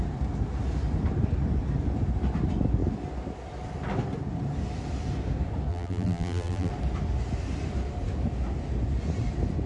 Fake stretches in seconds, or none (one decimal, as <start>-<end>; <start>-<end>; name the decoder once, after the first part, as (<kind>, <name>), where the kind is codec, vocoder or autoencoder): 5.7-6.7 (vocoder, BigVGAN v2)